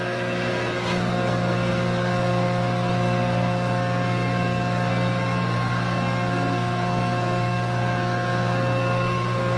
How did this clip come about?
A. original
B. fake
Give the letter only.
B